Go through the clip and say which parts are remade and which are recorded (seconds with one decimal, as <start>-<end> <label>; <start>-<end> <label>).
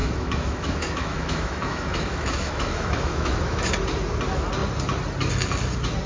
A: 0.0-3.7 remade; 3.7-6.1 recorded